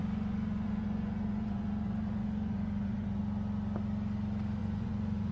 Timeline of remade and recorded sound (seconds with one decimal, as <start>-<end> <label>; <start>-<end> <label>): 0.0-3.2 remade; 3.2-4.6 recorded; 4.6-5.3 remade